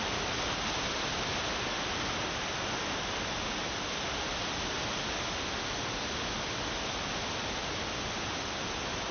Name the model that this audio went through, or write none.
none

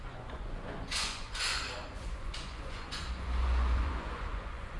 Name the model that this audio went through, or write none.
vocoder, Vocos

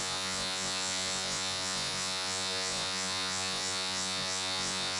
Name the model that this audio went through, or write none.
vocoder, Vocos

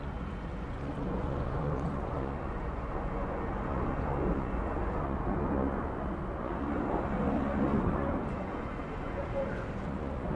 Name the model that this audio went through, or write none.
vocoder, Vocos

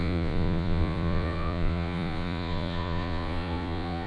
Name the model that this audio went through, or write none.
vocoder, Vocos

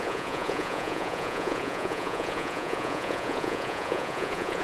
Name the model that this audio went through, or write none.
vocoder, Vocos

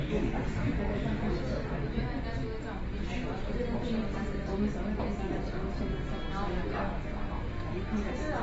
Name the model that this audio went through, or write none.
none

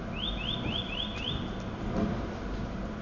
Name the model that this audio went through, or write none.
none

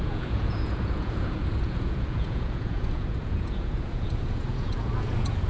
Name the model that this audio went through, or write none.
vocoder, Vocos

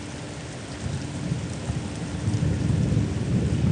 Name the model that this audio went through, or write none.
none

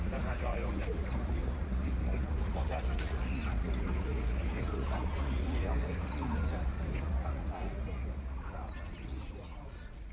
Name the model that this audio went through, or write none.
vocoder, Vocos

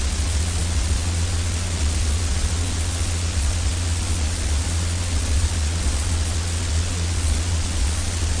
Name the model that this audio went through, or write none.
vocoder, Vocos